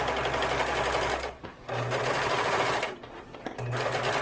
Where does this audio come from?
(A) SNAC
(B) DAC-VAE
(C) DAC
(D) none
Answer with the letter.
D